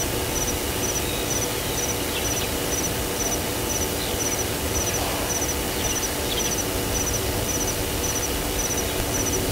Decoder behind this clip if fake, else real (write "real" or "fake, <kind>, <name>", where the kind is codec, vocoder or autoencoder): real